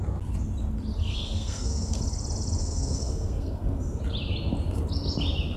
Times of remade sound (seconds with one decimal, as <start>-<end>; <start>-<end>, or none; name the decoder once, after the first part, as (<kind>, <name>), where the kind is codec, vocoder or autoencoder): 1.0-2.0 (codec, SNAC); 2.6-4.0